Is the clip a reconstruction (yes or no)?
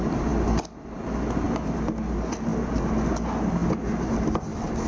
no